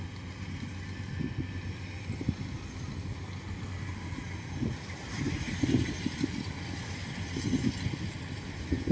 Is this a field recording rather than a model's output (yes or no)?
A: yes